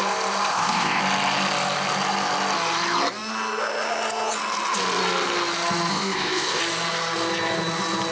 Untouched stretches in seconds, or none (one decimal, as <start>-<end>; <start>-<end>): 0.0-0.5; 1.0-5.9; 6.6-8.1